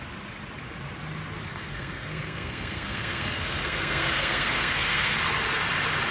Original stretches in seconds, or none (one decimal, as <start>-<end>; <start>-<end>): 0.0-1.5; 5.2-6.1